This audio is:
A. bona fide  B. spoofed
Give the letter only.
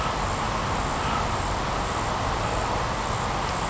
A